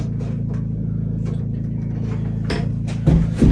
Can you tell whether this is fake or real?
real